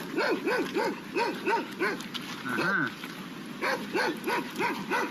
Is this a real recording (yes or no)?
yes